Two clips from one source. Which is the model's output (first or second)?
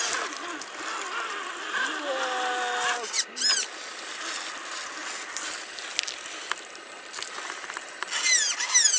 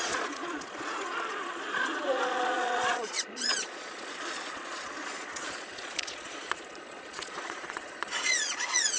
second